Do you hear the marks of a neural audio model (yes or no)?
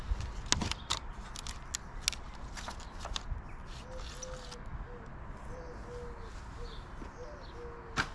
no